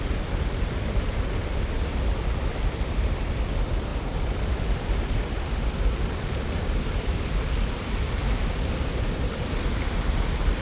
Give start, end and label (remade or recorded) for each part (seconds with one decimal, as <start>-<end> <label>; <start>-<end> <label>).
0.0-10.6 remade